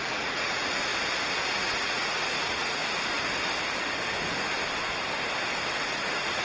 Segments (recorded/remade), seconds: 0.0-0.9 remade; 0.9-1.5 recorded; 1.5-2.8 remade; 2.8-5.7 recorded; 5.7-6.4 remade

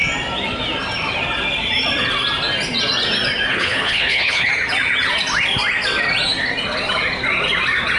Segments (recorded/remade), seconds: 0.0-3.5 recorded; 3.5-4.5 remade; 4.5-8.0 recorded